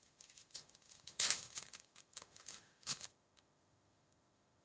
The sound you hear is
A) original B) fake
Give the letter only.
B